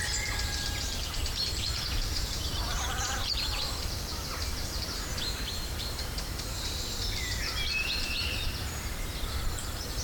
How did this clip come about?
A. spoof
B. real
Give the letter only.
A